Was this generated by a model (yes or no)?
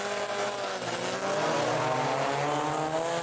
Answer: no